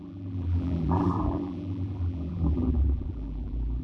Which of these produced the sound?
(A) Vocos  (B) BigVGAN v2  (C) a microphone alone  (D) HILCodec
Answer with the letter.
B